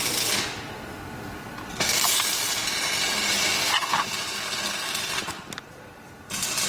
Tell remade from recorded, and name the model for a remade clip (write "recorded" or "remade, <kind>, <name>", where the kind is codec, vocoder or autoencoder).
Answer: recorded